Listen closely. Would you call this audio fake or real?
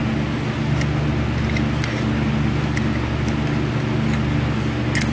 real